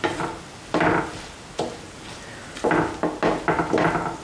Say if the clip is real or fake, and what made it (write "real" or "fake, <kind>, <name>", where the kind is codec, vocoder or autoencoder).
real